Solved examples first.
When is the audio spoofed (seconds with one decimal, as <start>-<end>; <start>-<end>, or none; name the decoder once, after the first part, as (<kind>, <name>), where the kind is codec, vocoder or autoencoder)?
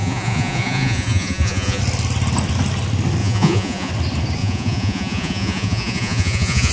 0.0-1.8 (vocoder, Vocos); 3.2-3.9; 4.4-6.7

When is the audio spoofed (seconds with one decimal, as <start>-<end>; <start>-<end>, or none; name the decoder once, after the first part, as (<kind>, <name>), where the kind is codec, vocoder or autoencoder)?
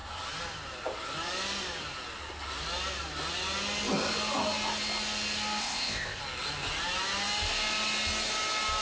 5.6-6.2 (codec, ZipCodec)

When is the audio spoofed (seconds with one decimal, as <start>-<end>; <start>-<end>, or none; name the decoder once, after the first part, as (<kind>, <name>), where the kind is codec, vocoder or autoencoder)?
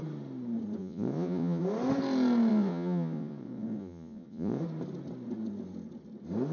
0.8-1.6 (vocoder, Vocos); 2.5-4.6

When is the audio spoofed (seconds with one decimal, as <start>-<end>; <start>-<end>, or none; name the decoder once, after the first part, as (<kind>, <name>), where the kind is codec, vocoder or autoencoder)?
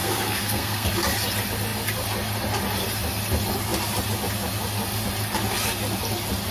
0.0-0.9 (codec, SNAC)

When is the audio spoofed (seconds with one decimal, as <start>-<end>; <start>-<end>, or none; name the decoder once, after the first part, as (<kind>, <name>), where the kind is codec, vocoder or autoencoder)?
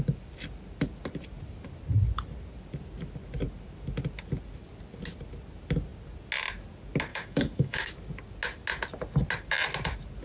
7.1-7.9 (autoencoder, DAC-VAE)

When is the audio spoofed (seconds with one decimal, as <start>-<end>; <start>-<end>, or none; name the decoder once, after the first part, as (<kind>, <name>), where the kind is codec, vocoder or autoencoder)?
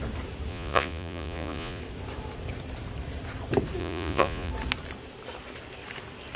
0.5-1.8 (vocoder, Vocos); 3.8-4.5